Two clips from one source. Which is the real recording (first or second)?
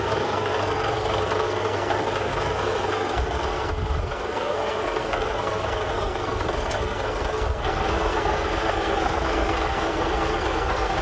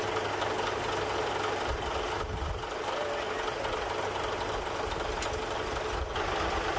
second